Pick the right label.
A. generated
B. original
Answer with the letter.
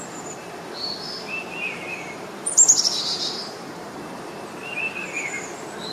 A